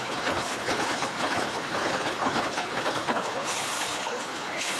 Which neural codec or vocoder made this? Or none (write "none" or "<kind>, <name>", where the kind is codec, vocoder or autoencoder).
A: codec, HILCodec